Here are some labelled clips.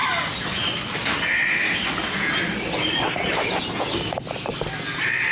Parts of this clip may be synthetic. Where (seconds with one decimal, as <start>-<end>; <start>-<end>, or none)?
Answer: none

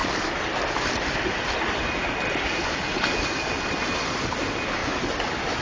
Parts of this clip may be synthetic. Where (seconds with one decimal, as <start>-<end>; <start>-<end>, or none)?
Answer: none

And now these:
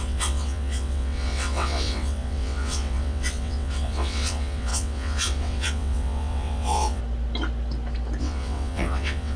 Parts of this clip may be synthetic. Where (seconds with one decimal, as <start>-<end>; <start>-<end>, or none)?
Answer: 0.0-7.0; 8.2-9.4

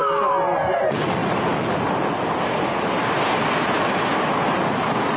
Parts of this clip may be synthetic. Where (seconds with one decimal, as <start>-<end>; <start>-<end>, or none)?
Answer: none